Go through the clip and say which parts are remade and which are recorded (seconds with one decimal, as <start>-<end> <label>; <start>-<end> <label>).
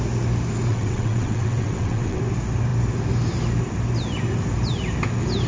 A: 0.0-0.7 recorded; 0.7-2.2 remade; 2.2-5.5 recorded